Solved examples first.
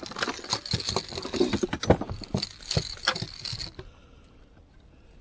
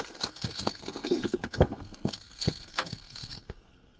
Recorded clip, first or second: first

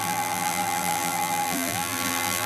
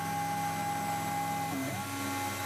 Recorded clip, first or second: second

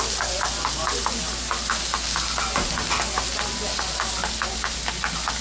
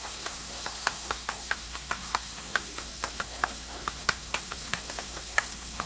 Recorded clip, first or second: first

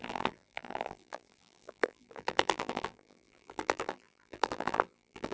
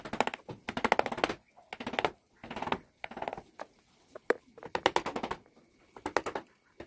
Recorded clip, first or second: second